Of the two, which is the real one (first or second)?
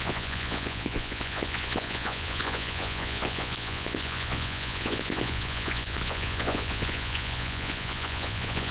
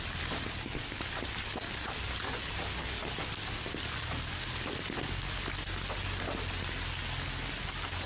second